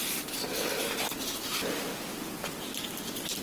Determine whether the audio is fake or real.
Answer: real